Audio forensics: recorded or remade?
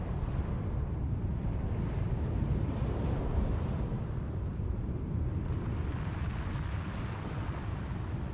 recorded